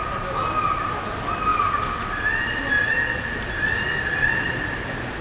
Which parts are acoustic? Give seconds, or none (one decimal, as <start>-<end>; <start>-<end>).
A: 0.0-5.2